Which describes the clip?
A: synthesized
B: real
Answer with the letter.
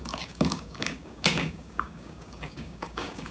A